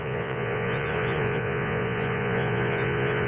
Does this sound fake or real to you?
fake